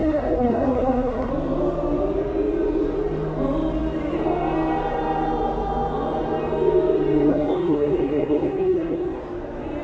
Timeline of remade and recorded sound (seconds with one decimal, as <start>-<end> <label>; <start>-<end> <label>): 0.0-1.3 remade; 1.3-7.3 recorded; 7.3-9.2 remade; 9.2-9.8 recorded